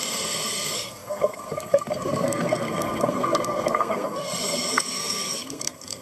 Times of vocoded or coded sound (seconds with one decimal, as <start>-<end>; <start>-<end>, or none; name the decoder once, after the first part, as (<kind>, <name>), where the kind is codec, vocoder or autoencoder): 0.0-6.0 (codec, SNAC)